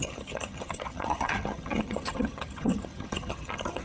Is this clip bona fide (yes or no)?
no